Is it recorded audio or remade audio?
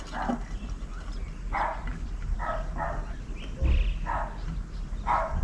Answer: recorded